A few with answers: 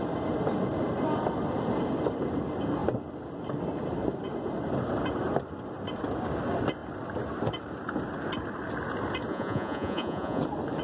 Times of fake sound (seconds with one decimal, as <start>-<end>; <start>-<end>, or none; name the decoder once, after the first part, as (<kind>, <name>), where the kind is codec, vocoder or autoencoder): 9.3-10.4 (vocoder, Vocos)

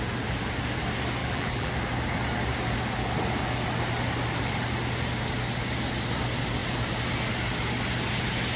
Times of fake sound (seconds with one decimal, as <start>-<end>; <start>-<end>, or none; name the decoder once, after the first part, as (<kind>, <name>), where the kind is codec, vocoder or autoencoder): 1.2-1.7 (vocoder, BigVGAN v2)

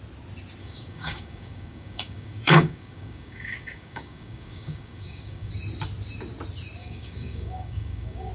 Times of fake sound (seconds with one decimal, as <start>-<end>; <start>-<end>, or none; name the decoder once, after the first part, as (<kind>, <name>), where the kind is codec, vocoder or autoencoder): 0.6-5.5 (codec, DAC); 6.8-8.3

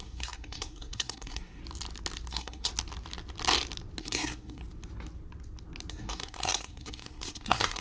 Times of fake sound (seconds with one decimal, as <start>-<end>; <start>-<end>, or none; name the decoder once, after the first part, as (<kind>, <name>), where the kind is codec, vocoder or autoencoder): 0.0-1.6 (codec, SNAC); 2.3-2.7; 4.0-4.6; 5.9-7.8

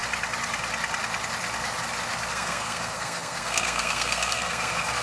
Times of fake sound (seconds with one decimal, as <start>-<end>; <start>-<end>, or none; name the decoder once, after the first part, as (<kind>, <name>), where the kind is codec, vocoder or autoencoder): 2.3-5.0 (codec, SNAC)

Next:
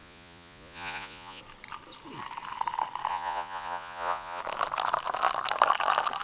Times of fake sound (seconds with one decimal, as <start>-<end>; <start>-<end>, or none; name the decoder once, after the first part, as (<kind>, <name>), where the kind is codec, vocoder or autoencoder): 0.0-1.4 (vocoder, Vocos); 3.1-4.4

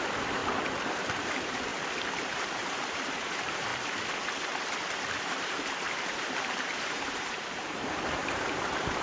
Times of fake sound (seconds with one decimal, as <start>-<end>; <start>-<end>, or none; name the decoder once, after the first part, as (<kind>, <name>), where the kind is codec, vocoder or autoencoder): 0.0-0.4 (vocoder, BigVGAN v2); 1.0-1.7; 2.2-3.7; 5.1-9.0

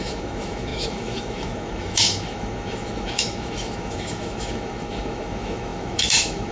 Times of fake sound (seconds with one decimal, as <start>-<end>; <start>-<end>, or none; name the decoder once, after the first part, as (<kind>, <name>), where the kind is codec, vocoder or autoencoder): 0.0-6.5 (autoencoder, DAC-VAE)